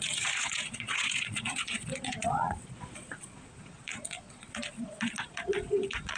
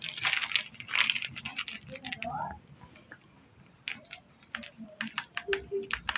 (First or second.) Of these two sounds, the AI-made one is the first